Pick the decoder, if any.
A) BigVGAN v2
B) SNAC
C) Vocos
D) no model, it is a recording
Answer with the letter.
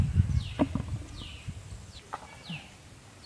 D